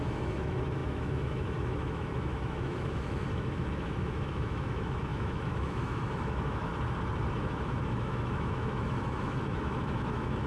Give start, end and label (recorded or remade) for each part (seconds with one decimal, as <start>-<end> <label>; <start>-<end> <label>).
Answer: 0.0-6.7 remade; 6.7-7.4 recorded; 7.4-10.5 remade